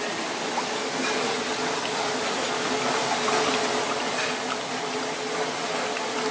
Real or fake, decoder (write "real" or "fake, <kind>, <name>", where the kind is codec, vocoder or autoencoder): real